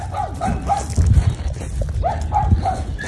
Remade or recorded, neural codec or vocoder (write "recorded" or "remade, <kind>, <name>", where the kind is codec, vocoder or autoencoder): recorded